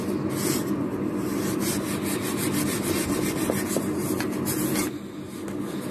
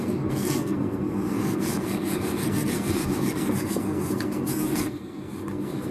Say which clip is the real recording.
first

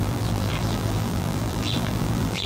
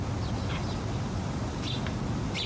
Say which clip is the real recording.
second